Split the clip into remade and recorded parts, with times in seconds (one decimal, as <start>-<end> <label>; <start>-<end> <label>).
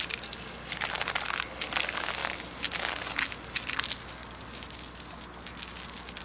0.0-6.2 recorded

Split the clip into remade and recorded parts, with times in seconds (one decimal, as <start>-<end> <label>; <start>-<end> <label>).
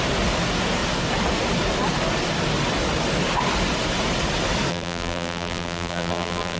0.0-4.7 recorded; 4.7-6.6 remade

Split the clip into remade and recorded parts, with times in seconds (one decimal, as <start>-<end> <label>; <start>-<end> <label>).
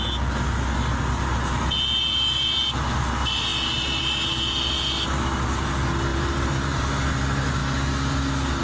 0.0-6.1 recorded; 6.1-6.8 remade; 6.8-8.6 recorded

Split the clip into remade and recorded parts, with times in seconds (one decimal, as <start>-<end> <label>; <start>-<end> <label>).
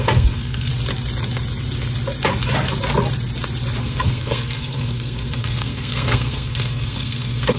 0.0-0.7 remade; 0.7-3.8 recorded; 3.8-7.6 remade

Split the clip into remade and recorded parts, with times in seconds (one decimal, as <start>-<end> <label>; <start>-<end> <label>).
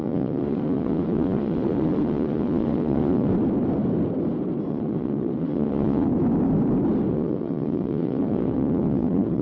0.0-3.3 remade; 3.3-4.7 recorded; 4.7-6.1 remade; 6.1-7.1 recorded; 7.1-9.4 remade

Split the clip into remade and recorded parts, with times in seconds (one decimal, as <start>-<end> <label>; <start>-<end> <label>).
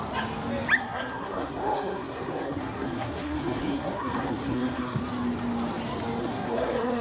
0.0-0.8 recorded; 0.8-5.0 remade; 5.0-6.2 recorded; 6.2-7.0 remade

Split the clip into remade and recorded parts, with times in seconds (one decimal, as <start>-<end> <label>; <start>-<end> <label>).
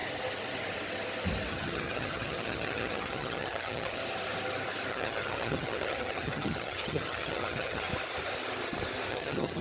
0.0-1.5 recorded; 1.5-4.0 remade; 4.0-4.9 recorded; 4.9-7.9 remade; 7.9-9.1 recorded; 9.1-9.6 remade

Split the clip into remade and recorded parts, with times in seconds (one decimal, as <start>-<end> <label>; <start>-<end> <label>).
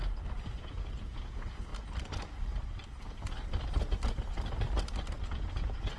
0.0-0.6 recorded; 0.6-1.7 remade; 1.7-5.3 recorded; 5.3-6.0 remade